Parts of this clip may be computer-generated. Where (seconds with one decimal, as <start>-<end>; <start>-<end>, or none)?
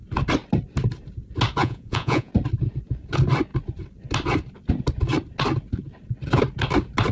1.6-2.3